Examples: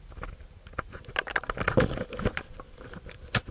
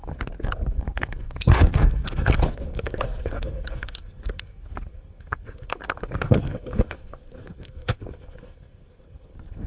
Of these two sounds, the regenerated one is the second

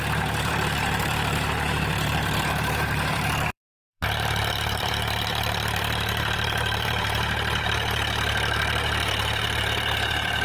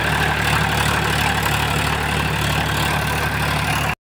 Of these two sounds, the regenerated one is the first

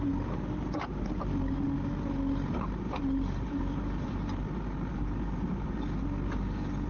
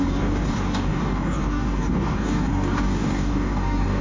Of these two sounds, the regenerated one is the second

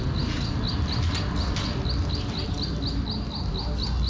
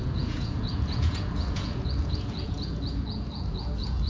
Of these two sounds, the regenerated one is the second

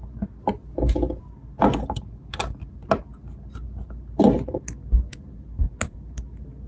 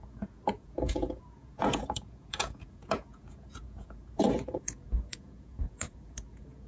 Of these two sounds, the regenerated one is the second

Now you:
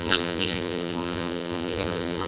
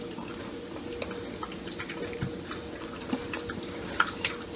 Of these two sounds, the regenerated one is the first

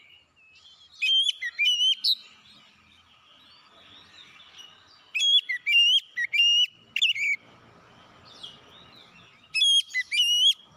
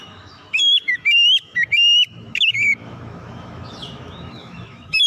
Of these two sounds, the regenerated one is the second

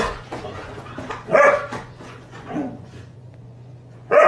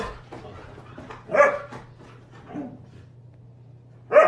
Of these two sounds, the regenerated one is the first